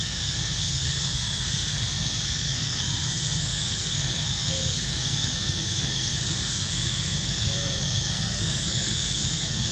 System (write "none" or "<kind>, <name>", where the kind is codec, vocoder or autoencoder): codec, SNAC